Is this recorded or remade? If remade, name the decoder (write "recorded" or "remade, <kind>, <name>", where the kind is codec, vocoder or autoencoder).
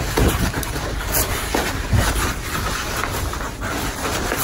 recorded